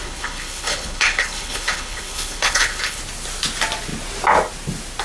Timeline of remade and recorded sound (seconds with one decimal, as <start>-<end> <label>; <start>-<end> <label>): 0.0-3.0 remade; 3.0-5.0 recorded